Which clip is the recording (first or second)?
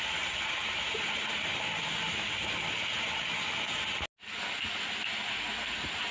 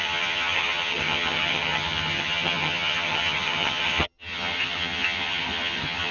first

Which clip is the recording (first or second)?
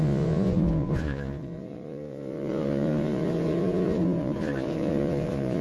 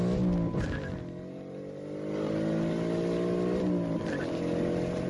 second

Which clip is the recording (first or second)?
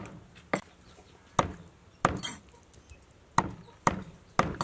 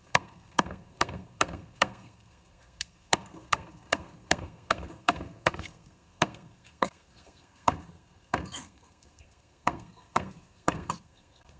first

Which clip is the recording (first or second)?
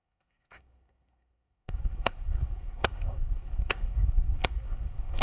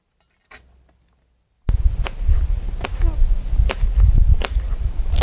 second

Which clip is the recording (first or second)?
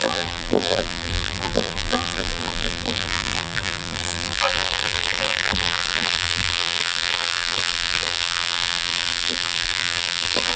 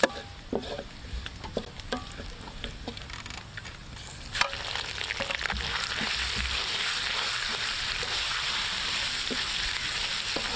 second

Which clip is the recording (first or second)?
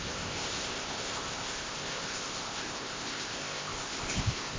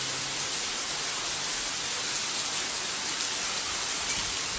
second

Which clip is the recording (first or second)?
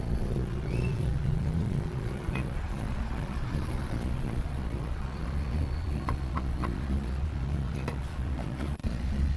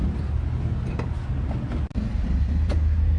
second